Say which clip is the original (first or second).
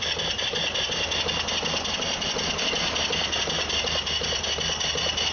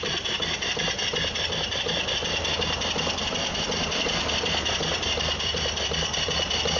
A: first